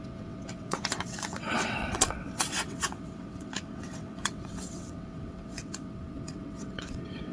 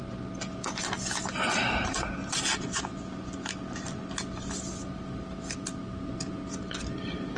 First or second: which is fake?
first